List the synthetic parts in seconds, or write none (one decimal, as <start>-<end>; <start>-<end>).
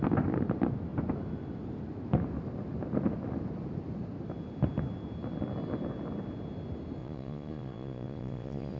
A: 7.0-8.8